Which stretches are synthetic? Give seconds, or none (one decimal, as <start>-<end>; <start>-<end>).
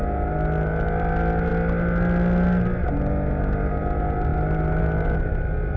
none